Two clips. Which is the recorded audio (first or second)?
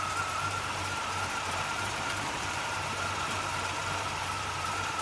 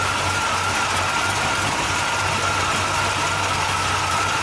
second